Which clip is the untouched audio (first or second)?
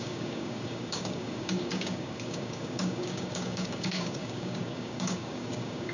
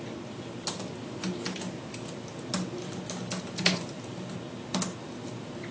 second